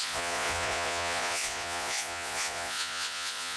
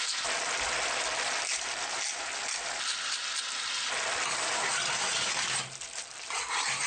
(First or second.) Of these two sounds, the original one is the second